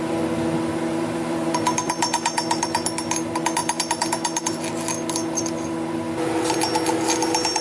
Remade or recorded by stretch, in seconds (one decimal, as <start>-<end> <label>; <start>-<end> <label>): 0.0-0.9 recorded; 0.9-2.1 remade; 2.1-7.6 recorded

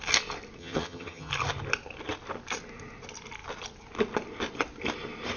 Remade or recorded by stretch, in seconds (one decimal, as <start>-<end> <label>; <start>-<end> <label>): 0.0-0.6 recorded; 0.6-1.3 remade; 1.3-5.4 recorded

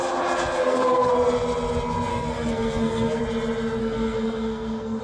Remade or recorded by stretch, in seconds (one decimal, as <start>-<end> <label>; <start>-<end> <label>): 0.0-0.6 recorded; 0.6-1.1 remade; 1.1-2.1 recorded; 2.1-3.2 remade; 3.2-3.8 recorded; 3.8-5.0 remade

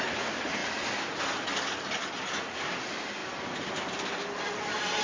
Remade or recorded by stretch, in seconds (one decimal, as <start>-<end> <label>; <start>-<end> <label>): 0.0-5.0 recorded

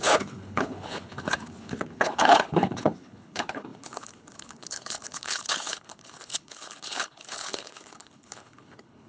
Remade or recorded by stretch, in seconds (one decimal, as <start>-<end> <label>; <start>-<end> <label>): 0.0-9.1 remade